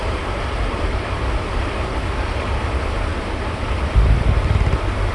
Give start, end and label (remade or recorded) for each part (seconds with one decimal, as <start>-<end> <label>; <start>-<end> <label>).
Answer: 0.0-2.3 remade; 2.3-3.1 recorded; 3.1-4.3 remade; 4.3-5.1 recorded